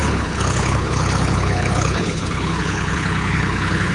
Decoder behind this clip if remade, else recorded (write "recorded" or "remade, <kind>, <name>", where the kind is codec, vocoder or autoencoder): remade, codec, HILCodec